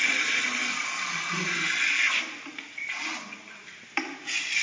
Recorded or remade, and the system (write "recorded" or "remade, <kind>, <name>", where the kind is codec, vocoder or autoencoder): recorded